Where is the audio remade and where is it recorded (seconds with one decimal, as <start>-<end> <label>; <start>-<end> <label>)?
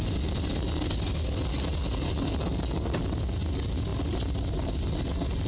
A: 0.0-5.5 recorded